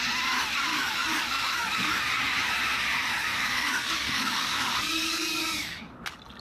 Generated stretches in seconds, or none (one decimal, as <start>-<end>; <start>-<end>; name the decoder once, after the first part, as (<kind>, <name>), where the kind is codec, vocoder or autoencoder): 0.7-2.0 (codec, DAC); 3.3-5.8